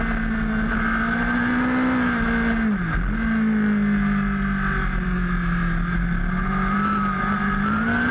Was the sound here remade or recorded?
recorded